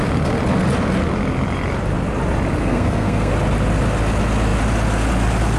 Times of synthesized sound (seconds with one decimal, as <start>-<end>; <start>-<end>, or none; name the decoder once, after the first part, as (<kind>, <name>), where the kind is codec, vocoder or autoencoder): 2.6-3.3 (codec, SNAC)